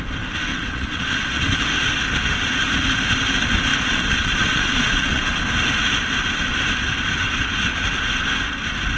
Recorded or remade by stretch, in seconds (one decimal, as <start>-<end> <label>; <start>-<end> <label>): 0.0-0.5 recorded; 0.5-1.4 remade; 1.4-3.7 recorded; 3.7-5.4 remade; 5.4-9.0 recorded